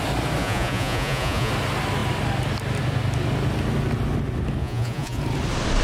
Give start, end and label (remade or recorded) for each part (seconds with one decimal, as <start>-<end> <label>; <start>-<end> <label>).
0.0-0.4 recorded; 0.4-1.5 remade; 1.5-4.6 recorded; 4.6-5.2 remade; 5.2-5.8 recorded